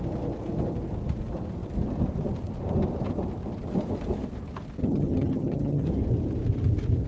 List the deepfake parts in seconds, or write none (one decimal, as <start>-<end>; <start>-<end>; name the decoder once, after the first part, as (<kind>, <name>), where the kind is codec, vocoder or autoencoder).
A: 4.8-5.9 (vocoder, HiFi-GAN)